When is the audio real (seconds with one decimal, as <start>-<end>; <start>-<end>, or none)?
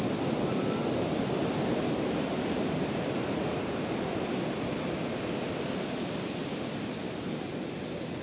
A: 0.0-8.2